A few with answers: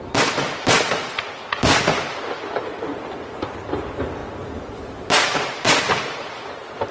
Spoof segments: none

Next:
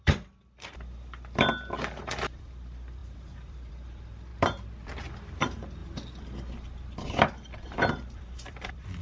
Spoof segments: 0.0-4.3 (vocoder, BigVGAN v2); 5.1-9.0

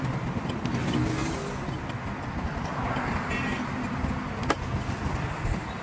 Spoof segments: none

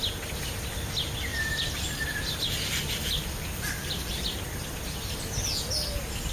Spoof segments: 1.3-4.2 (vocoder, BigVGAN v2)

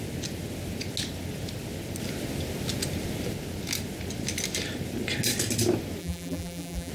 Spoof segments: 6.0-6.9 (vocoder, BigVGAN v2)